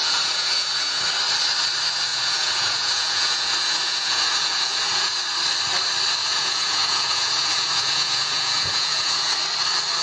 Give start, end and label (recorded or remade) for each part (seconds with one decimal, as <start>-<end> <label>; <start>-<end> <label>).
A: 0.0-1.0 remade; 1.0-2.1 recorded; 2.1-5.2 remade; 5.2-6.2 recorded; 6.2-9.3 remade; 9.3-10.0 recorded